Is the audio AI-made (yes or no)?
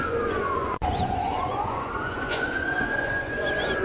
yes